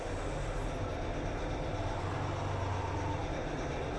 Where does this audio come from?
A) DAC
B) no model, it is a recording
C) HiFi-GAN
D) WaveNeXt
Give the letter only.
B